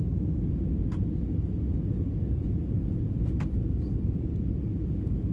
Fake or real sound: real